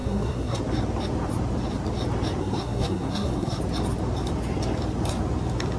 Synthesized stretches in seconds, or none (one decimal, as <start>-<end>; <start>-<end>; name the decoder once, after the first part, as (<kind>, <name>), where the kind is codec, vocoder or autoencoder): 0.0-0.6 (codec, SNAC); 2.4-3.6